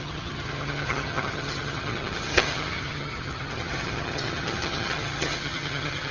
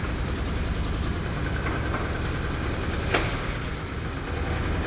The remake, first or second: first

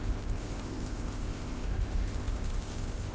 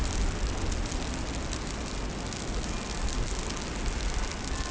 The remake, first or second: first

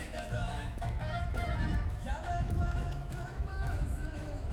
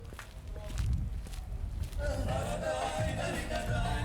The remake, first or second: first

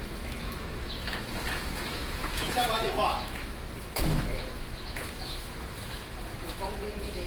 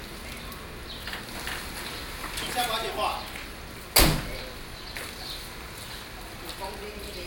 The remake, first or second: first